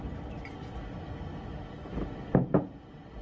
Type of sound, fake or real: real